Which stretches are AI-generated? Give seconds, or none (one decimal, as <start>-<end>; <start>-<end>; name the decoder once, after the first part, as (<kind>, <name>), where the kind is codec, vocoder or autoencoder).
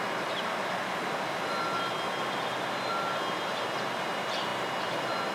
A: none